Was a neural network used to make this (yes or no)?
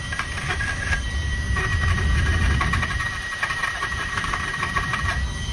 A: no